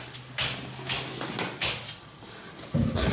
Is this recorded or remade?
recorded